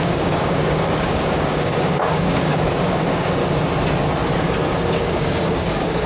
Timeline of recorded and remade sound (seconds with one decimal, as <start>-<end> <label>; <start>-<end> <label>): 0.0-3.4 remade; 3.4-4.9 recorded; 4.9-6.1 remade